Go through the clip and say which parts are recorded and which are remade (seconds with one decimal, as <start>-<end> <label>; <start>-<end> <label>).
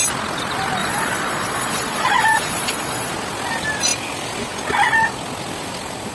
0.0-0.8 recorded; 0.8-3.1 remade; 3.1-6.1 recorded